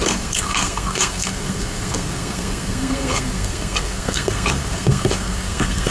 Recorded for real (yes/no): no